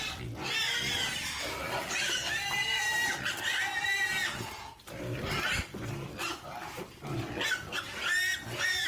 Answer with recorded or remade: recorded